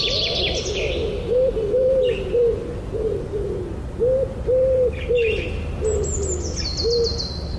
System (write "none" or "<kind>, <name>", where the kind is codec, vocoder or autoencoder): none